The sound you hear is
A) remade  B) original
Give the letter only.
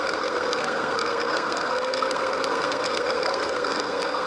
A